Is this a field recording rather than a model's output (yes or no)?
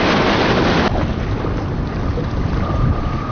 yes